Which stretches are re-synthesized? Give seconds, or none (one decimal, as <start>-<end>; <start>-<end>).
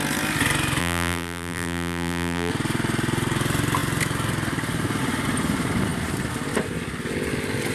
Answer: 0.8-2.5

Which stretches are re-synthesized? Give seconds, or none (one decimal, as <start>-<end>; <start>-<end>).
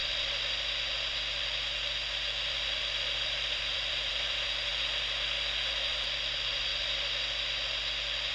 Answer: 0.0-4.7; 5.7-6.7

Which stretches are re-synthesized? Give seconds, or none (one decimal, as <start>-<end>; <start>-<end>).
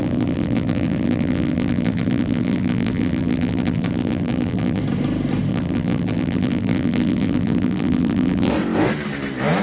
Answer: 0.0-4.8; 5.5-8.5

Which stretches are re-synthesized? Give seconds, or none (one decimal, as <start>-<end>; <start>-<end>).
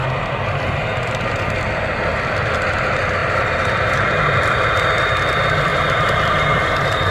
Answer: 0.0-1.4; 3.2-4.2; 5.7-7.1